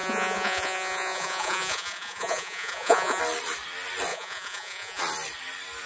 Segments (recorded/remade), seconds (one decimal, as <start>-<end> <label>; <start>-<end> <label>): 0.0-3.2 remade; 3.2-4.1 recorded; 4.1-5.0 remade; 5.0-5.9 recorded